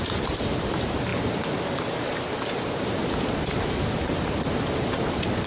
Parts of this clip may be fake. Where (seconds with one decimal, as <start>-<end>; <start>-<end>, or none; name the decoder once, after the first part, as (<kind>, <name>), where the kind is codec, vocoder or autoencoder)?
0.0-5.5 (vocoder, BigVGAN v2)